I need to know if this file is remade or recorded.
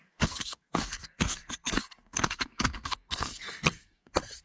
remade